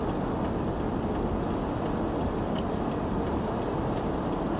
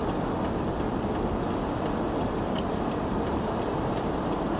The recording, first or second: first